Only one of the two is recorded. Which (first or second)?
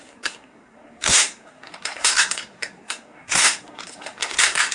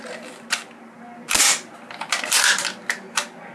second